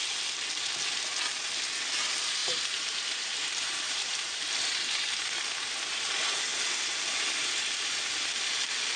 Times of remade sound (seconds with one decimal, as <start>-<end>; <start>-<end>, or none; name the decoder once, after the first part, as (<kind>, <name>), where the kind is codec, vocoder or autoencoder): 2.4-6.1 (vocoder, BigVGAN v2)